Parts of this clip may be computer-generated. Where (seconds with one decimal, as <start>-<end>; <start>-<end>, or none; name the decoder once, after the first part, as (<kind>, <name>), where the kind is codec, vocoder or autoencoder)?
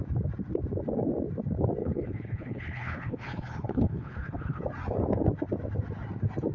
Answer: 1.8-4.6 (codec, HILCodec)